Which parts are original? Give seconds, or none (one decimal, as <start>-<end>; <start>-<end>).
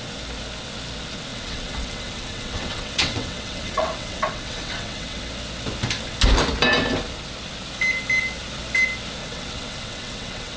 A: 0.0-1.3; 5.3-9.2